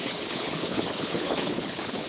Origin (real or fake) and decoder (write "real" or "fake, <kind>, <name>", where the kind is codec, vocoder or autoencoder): fake, codec, HILCodec